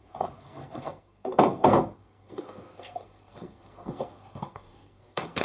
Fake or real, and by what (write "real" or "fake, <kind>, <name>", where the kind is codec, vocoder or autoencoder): fake, codec, SNAC